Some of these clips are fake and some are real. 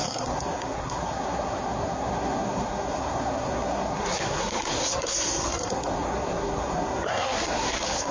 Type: fake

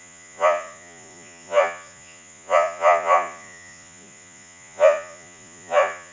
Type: fake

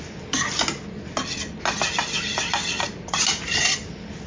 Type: real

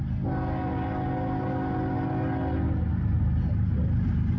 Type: real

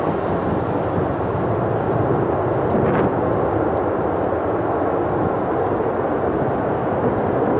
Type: real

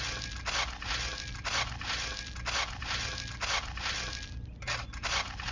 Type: real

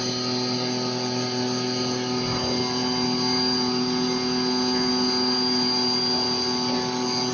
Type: real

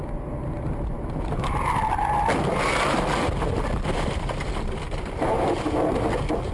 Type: real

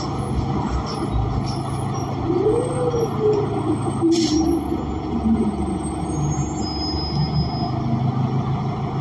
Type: real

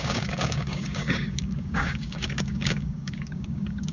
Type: fake